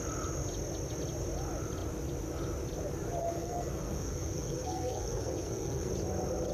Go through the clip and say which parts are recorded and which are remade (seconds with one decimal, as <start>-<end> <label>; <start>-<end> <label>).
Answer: 0.0-3.2 recorded; 3.2-5.9 remade; 5.9-6.5 recorded